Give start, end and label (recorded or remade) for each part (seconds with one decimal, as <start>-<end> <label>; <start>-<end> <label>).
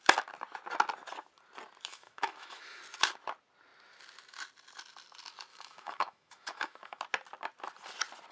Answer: 0.0-1.9 recorded; 1.9-2.8 remade; 2.8-5.5 recorded; 5.5-7.0 remade; 7.0-8.3 recorded